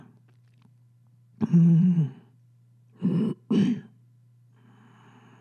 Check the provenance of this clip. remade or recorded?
recorded